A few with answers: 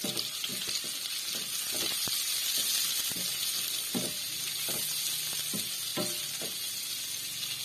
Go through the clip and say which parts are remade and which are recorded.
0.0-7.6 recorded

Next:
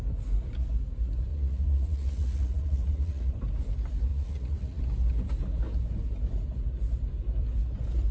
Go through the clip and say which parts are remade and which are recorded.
0.0-1.3 recorded; 1.3-3.3 remade; 3.3-4.1 recorded; 4.1-4.8 remade; 4.8-8.1 recorded

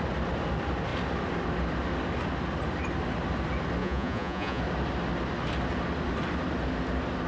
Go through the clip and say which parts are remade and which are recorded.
0.0-3.8 recorded; 3.8-4.6 remade; 4.6-7.3 recorded

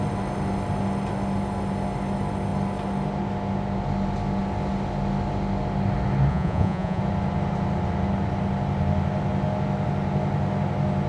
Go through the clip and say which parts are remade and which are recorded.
0.0-6.3 recorded; 6.3-7.0 remade; 7.0-11.1 recorded

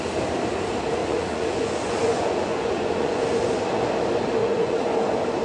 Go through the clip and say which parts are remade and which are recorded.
0.0-1.0 recorded; 1.0-3.2 remade; 3.2-4.4 recorded; 4.4-5.0 remade; 5.0-5.4 recorded

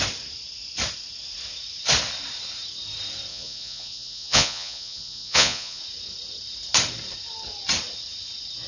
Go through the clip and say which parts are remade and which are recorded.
0.0-3.3 recorded; 3.3-5.8 remade; 5.8-8.7 recorded